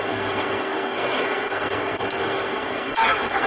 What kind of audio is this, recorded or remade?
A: remade